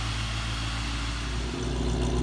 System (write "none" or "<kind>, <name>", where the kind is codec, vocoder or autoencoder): none